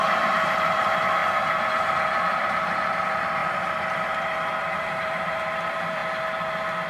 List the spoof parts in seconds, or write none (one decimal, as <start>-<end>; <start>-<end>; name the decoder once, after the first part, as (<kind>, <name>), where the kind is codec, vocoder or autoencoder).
0.0-6.0 (vocoder, BigVGAN v2)